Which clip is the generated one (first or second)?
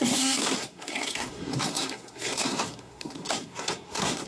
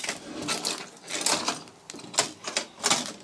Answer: first